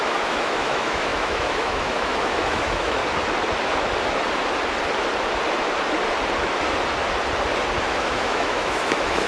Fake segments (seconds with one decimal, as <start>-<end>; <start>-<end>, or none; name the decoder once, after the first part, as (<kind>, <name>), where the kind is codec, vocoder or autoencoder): 0.0-3.0 (autoencoder, DAC-VAE); 7.8-9.3